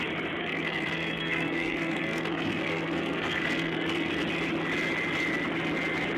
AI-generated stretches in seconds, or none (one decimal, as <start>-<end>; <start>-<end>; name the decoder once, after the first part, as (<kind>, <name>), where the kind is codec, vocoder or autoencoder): 0.4-4.1 (codec, SNAC)